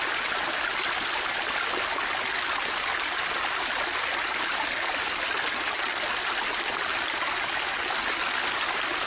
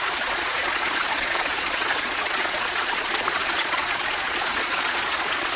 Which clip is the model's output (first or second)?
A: second